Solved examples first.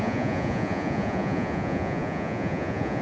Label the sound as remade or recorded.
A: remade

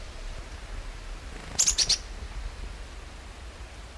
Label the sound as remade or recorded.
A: recorded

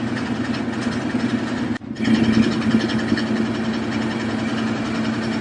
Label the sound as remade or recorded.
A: recorded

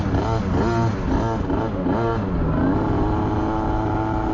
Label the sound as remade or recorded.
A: recorded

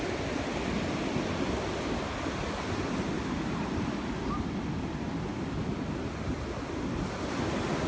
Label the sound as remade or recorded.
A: recorded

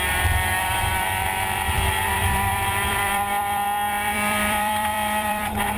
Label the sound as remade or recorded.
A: remade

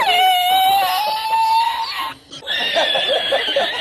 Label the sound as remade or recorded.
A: recorded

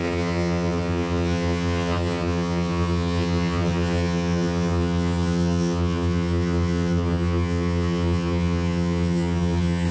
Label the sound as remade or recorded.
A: remade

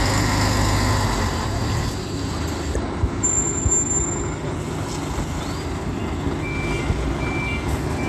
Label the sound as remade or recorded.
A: recorded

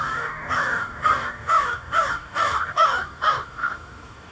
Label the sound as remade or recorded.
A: remade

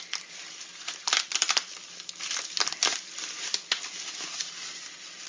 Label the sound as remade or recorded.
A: remade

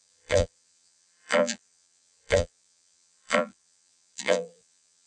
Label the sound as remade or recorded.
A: remade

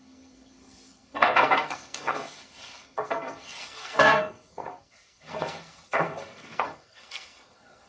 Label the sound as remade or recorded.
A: remade